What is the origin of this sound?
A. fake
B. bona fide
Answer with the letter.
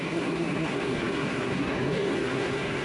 A